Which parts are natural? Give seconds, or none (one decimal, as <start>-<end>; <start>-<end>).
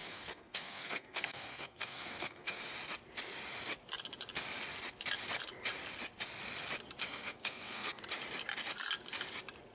2.6-7.0; 8.0-9.7